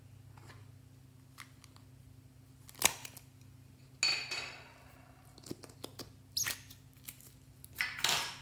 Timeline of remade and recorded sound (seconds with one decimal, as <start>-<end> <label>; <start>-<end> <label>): 0.0-8.4 recorded